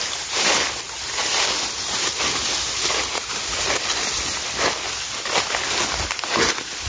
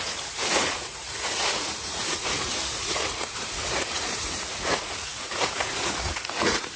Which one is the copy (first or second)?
second